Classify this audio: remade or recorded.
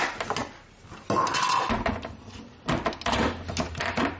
recorded